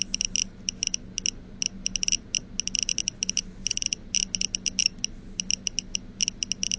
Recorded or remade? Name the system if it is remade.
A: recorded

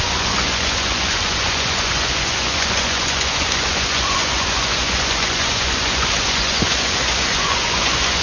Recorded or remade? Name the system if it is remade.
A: remade, vocoder, Vocos